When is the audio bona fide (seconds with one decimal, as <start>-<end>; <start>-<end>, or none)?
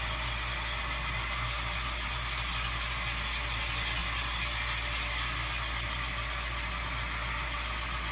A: 0.0-8.1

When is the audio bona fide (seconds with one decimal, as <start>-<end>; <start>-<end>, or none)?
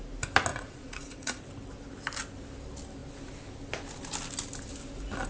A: 0.0-0.5; 1.4-5.3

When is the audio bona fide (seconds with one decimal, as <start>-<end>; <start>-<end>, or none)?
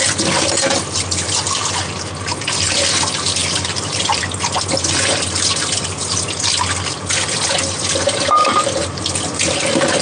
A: 0.0-3.4; 4.2-8.4; 9.0-10.0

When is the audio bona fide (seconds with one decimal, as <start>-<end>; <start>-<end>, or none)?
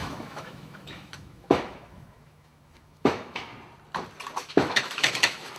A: 3.5-4.5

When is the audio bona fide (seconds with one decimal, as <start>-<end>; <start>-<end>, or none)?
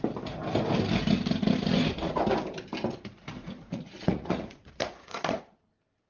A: 0.0-3.4; 5.4-6.1